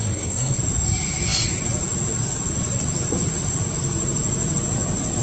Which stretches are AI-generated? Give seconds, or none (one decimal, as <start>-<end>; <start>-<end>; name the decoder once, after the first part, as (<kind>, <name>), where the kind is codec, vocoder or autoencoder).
0.0-0.6 (codec, SNAC)